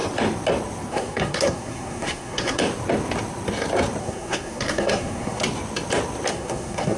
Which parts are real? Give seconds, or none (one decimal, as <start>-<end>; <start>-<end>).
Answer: 0.0-0.9; 2.6-4.0; 5.4-6.3